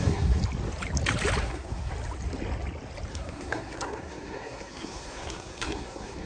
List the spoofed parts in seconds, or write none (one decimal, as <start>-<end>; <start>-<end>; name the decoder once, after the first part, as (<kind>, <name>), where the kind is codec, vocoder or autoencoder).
0.0-0.4 (codec, SNAC); 1.4-1.9; 3.1-6.3